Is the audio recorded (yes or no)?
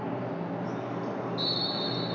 yes